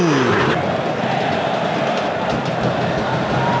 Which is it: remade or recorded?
recorded